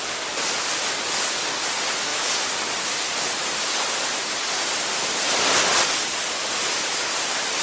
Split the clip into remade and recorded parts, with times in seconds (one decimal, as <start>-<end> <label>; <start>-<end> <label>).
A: 0.0-7.6 recorded